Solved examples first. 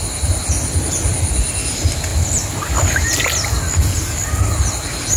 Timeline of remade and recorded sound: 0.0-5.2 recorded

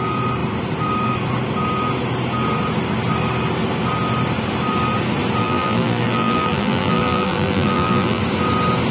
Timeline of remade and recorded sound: 0.0-5.4 recorded; 5.4-8.2 remade; 8.2-8.9 recorded